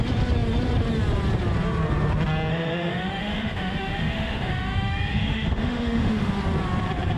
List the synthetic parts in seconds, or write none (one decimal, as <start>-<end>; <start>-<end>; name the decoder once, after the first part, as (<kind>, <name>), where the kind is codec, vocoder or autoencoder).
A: 2.5-6.3 (autoencoder, DAC-VAE)